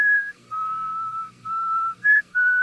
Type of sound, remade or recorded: remade